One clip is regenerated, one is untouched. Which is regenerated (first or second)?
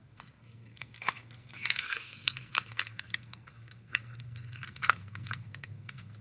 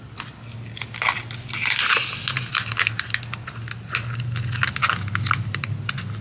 first